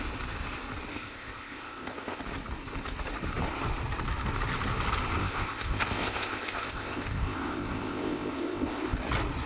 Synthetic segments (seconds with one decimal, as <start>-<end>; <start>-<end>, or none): 0.9-2.2; 5.2-9.0